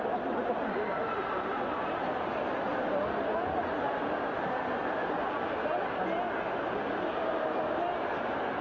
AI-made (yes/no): no